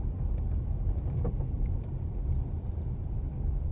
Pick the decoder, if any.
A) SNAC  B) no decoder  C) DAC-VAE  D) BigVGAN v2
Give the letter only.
D